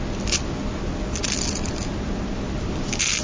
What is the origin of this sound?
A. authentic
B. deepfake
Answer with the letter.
A